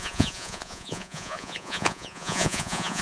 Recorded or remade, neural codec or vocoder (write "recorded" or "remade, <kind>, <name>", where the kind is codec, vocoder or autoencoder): remade, vocoder, Vocos